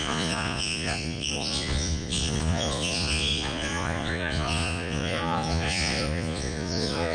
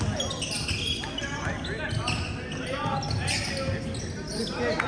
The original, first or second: second